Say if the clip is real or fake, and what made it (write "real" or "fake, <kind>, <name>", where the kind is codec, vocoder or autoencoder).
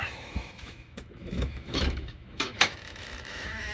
fake, autoencoder, DAC-VAE